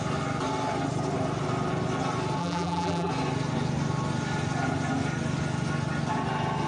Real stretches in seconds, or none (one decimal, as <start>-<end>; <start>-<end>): 0.0-2.4; 3.1-6.7